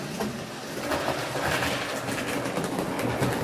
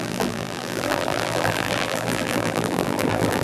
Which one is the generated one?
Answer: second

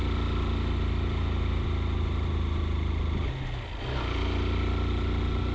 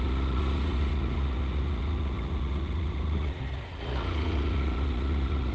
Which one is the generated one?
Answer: second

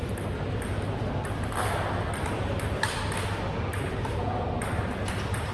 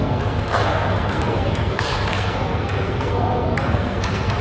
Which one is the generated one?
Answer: second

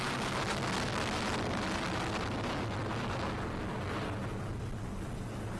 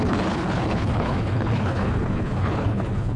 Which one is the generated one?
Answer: second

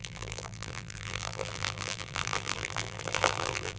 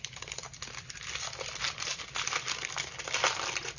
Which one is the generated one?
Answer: first